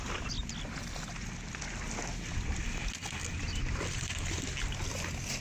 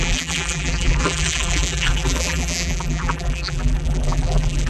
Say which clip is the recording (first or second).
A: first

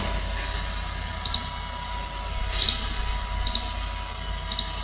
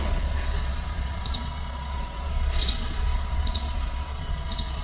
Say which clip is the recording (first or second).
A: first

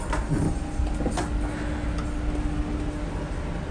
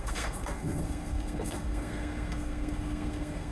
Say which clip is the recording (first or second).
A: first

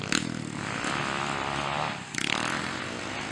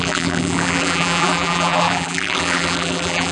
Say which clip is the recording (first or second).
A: first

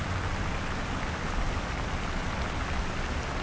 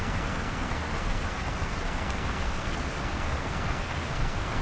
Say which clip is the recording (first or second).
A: first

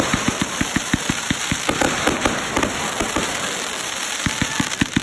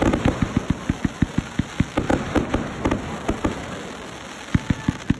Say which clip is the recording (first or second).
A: second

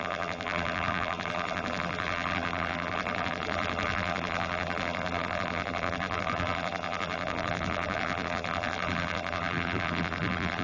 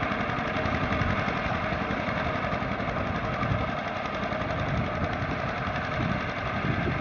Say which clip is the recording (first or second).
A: second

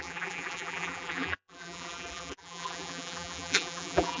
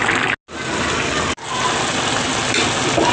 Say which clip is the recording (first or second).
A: second